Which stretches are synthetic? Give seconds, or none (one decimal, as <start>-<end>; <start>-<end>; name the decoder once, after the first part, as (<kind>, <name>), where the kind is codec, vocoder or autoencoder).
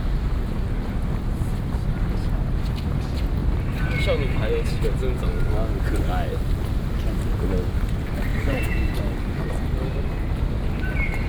8.3-9.0 (vocoder, Vocos)